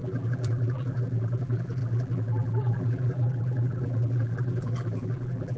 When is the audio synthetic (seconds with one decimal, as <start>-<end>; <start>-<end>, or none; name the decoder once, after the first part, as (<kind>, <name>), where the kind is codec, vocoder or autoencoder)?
0.0-5.6 (vocoder, BigVGAN v2)